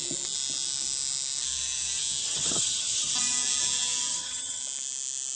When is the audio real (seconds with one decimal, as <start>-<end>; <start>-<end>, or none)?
0.0-2.2; 3.1-4.1; 4.6-5.4